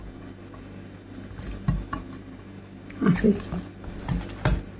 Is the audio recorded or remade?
recorded